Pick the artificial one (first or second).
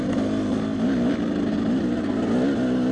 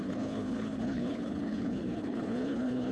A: second